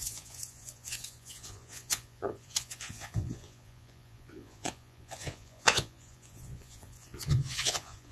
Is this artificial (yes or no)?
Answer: yes